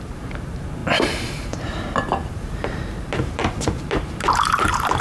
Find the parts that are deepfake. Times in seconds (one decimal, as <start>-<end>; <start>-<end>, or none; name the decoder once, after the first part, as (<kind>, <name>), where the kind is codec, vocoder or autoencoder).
0.0-5.0 (vocoder, BigVGAN v2)